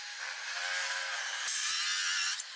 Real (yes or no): yes